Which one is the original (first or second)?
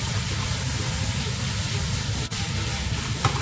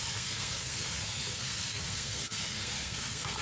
first